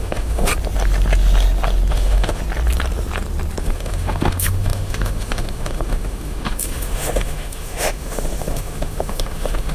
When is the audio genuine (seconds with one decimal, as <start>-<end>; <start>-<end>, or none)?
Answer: 0.5-1.9; 2.4-3.6